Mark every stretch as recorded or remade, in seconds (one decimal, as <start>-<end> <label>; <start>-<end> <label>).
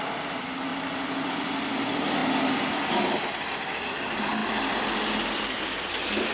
0.0-6.3 recorded